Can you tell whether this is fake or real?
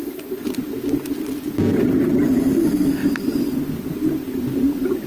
real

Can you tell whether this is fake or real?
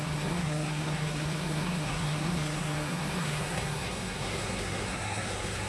fake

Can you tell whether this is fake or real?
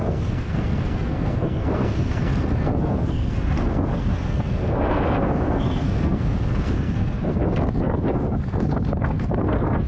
fake